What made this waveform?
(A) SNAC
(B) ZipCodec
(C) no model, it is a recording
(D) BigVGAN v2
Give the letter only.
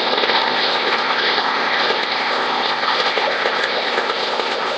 B